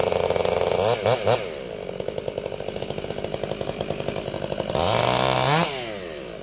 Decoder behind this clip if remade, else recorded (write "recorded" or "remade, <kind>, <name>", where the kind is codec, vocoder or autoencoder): recorded